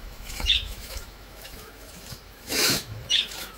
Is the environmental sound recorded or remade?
remade